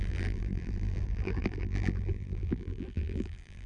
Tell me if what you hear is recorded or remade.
remade